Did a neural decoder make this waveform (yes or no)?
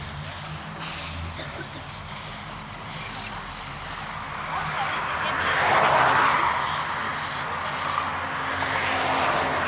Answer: no